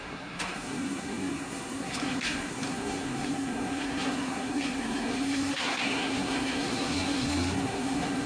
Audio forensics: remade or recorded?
remade